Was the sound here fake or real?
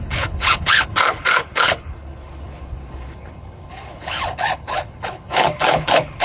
fake